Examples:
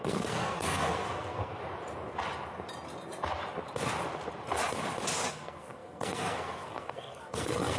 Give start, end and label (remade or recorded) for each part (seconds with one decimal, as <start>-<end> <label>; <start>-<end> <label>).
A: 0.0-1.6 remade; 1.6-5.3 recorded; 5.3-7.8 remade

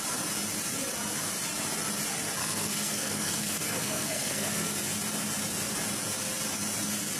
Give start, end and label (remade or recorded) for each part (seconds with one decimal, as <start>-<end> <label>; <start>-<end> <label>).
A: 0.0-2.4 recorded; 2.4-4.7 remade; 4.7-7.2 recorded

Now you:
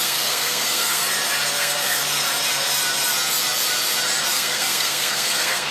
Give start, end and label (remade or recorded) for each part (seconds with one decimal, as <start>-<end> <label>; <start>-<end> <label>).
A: 0.0-1.0 remade; 1.0-1.6 recorded; 1.6-2.0 remade; 2.0-4.3 recorded; 4.3-5.7 remade

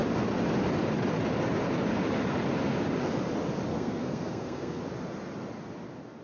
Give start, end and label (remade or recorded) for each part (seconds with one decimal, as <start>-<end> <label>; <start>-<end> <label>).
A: 0.0-3.7 recorded; 3.7-4.8 remade; 4.8-6.2 recorded

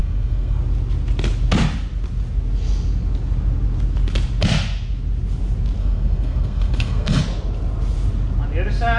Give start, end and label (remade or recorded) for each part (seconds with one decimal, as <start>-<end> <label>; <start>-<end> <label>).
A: 0.0-0.6 remade; 0.6-5.8 recorded; 5.8-7.2 remade; 7.2-9.0 recorded